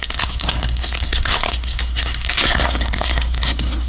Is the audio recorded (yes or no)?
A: no